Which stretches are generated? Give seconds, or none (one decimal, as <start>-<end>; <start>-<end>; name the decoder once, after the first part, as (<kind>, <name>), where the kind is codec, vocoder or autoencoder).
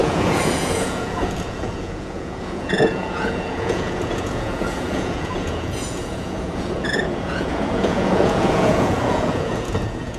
0.0-10.2 (vocoder, Vocos)